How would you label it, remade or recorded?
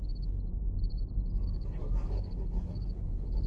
remade